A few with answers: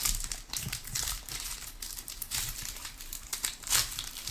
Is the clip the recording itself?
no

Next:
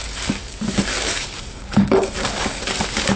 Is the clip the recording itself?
no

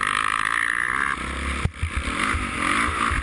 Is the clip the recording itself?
yes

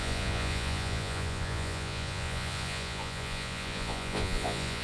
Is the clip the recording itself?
no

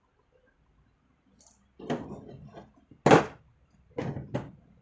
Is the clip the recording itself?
yes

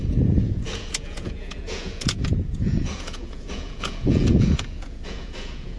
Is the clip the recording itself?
no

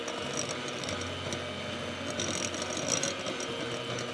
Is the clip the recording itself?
yes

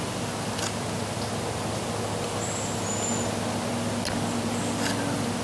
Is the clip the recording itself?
yes